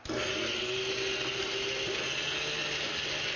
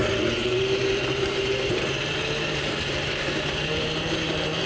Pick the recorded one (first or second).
first